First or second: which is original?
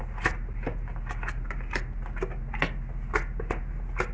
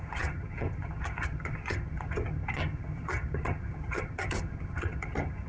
first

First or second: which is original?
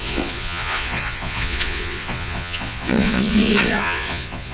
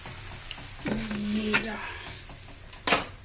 second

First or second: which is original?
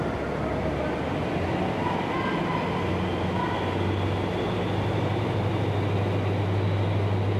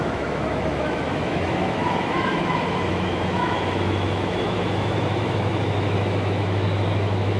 first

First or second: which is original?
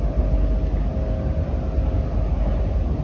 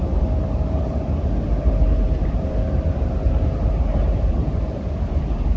first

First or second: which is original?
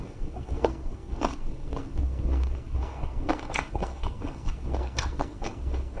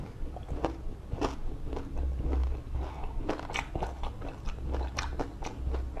second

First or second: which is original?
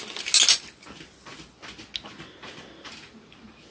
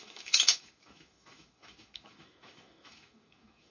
first